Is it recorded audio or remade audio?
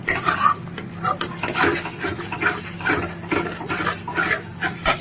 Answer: recorded